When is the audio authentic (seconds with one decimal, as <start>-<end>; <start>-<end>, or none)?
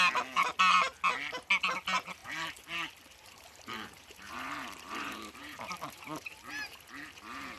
0.0-2.2; 6.5-7.6